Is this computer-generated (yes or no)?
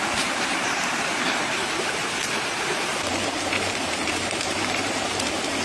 yes